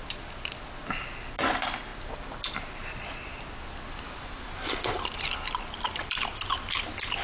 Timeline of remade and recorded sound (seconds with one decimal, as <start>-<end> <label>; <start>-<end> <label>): 0.0-7.2 recorded